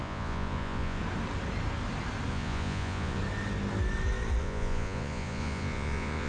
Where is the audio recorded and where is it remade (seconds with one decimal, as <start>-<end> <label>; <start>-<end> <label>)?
0.0-1.0 remade; 1.0-2.3 recorded; 2.3-3.2 remade; 3.2-4.4 recorded; 4.4-6.3 remade